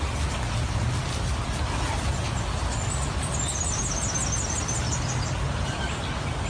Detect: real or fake real